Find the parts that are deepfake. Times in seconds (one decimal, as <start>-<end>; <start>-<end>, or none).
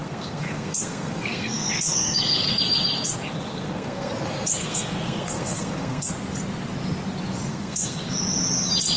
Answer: 0.0-2.6; 3.5-4.1; 4.6-6.1; 7.5-8.1